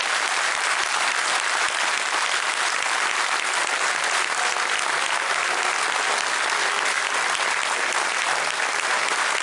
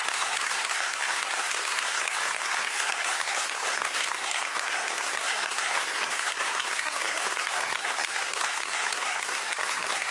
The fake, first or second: second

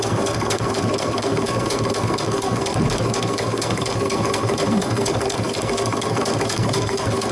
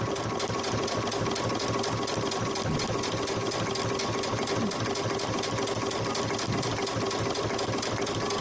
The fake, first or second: first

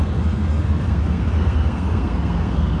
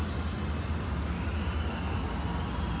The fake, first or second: first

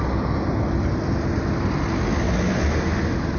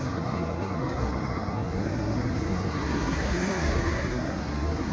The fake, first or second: second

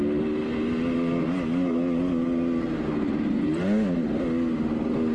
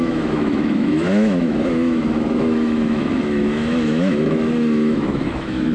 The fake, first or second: second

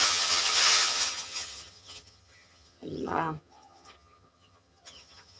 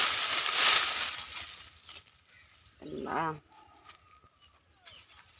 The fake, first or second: first